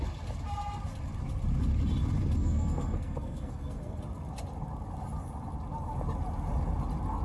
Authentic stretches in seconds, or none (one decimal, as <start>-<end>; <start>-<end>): 0.0-2.4; 4.0-7.2